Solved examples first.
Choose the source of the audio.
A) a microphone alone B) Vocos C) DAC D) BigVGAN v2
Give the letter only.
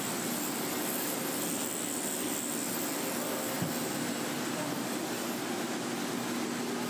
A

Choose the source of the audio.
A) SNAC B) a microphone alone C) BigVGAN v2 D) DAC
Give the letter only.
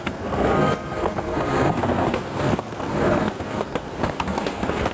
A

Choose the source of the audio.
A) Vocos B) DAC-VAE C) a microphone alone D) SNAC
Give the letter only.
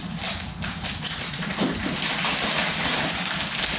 C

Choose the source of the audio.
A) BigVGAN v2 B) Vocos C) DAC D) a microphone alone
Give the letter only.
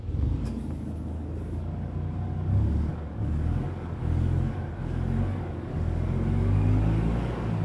C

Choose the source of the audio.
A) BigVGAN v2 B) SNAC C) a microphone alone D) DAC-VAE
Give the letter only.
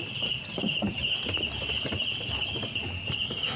C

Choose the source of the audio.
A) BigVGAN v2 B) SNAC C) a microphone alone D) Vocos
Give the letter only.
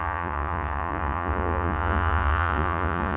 D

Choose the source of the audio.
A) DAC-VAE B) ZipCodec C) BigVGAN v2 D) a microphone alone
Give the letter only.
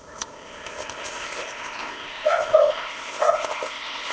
B